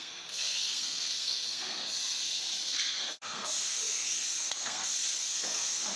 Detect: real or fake fake